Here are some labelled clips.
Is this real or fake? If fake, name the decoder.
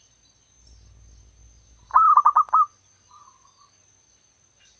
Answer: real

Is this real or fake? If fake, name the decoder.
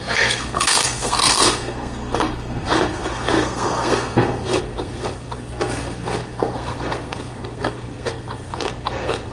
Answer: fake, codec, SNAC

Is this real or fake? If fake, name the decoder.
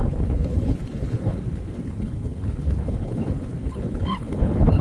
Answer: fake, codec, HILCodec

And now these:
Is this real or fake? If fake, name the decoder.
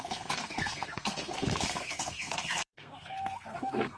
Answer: fake, codec, SNAC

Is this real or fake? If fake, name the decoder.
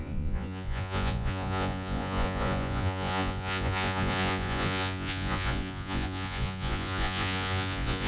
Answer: fake, vocoder, Vocos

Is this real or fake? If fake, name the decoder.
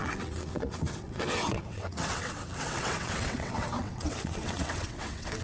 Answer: fake, vocoder, WaveNeXt